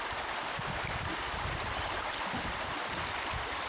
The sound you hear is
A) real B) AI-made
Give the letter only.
A